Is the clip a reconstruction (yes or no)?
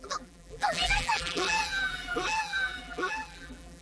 yes